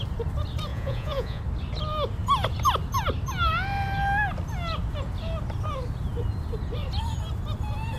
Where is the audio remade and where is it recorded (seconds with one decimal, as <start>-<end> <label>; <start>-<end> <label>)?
0.0-0.7 recorded; 0.7-1.4 remade; 1.4-8.0 recorded